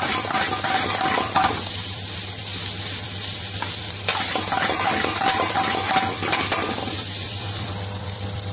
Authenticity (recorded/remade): remade